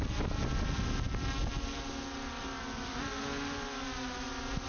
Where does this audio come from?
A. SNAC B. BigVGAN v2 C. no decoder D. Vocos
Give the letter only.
C